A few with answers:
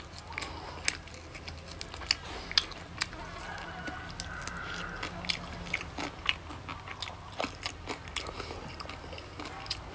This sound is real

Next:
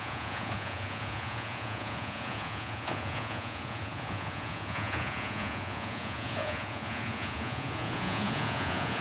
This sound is fake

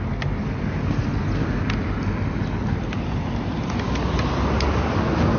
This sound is real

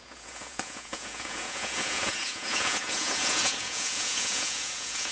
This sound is fake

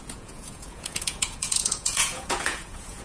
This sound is fake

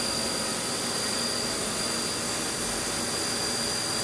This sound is real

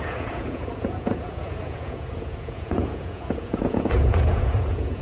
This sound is fake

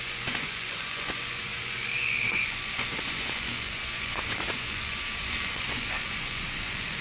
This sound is fake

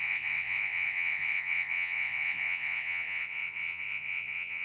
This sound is fake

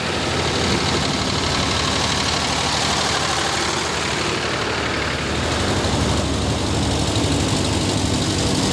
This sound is real